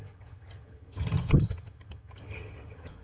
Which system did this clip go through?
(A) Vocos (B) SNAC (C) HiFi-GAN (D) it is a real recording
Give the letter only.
C